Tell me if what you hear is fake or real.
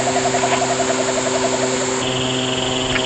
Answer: real